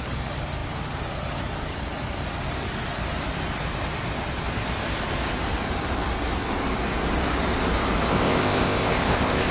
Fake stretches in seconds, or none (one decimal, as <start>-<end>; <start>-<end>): 8.1-9.5

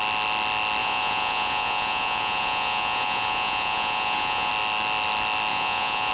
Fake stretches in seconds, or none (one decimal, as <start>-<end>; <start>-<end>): 0.8-4.5; 5.5-6.1

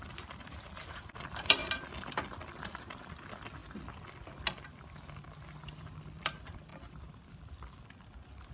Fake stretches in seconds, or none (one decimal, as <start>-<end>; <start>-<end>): 0.0-1.6; 2.8-3.6; 5.7-6.7

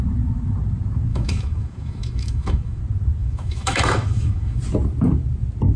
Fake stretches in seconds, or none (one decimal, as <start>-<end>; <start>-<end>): 1.1-2.8; 3.2-4.6

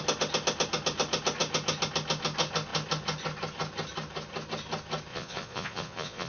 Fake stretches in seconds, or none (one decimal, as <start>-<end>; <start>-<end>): 5.1-6.3

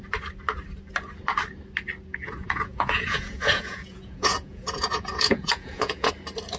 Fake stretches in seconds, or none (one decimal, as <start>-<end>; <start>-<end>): 2.1-6.1